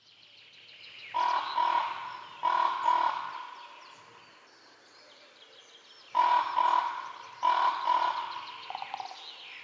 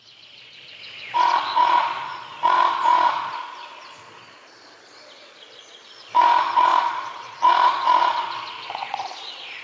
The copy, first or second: second